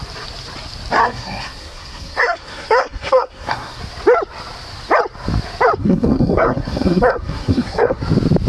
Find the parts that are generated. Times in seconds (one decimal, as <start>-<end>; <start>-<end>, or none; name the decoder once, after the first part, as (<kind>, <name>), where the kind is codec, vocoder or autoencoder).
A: 1.0-3.8 (codec, SNAC); 5.8-8.0